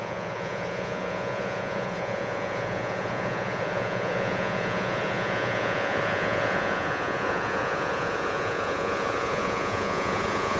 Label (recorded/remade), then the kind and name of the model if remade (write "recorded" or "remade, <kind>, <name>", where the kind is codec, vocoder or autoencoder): remade, vocoder, Vocos